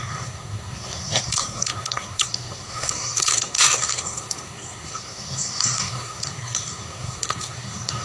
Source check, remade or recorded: remade